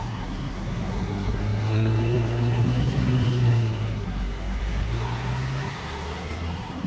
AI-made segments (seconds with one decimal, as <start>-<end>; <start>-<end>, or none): 0.0-6.9